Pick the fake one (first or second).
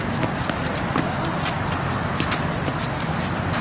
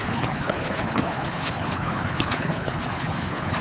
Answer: second